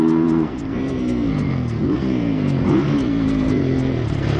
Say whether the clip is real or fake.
fake